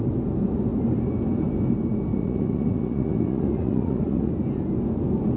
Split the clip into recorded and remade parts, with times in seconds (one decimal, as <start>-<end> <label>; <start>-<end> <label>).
0.0-2.1 recorded; 2.1-4.3 remade; 4.3-5.4 recorded